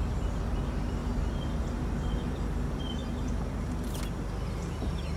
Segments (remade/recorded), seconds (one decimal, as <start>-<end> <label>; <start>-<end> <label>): 0.0-5.2 recorded